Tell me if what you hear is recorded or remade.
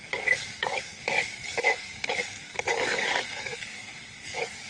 remade